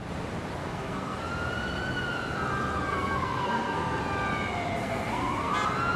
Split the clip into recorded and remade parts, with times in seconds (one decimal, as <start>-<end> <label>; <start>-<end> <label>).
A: 0.0-0.6 recorded; 0.6-1.2 remade; 1.2-2.9 recorded; 2.9-4.0 remade; 4.0-4.8 recorded; 4.8-5.5 remade; 5.5-6.0 recorded